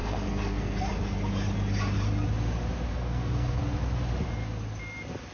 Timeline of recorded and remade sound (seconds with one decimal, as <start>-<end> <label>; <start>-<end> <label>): 0.0-0.9 remade; 0.9-2.9 recorded; 2.9-3.6 remade; 3.6-5.3 recorded